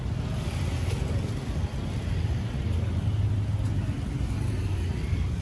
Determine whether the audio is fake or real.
real